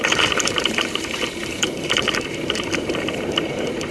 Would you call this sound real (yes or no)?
no